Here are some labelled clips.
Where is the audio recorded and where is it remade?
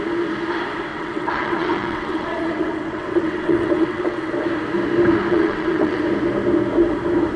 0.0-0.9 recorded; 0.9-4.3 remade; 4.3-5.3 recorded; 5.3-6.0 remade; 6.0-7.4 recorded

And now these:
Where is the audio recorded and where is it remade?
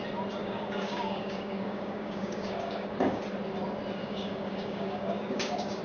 0.0-0.4 recorded; 0.4-3.2 remade; 3.2-4.0 recorded; 4.0-5.8 remade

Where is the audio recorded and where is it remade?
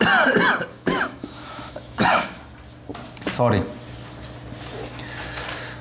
0.0-0.7 recorded; 0.7-2.4 remade; 2.4-5.8 recorded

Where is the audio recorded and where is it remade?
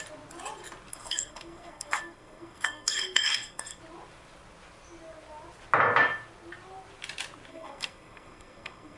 0.0-0.9 recorded; 0.9-3.8 remade; 3.8-7.5 recorded; 7.5-9.0 remade